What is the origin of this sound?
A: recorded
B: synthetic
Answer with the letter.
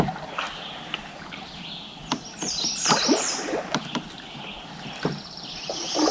A